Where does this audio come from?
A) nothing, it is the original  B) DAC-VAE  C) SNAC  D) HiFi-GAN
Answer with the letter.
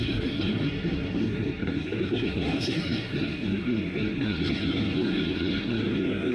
C